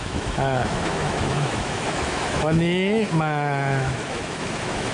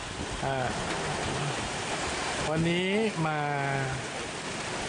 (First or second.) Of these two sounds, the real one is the second